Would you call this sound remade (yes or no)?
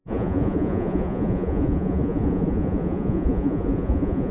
yes